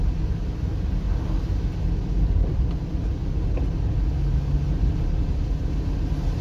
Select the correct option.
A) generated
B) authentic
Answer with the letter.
B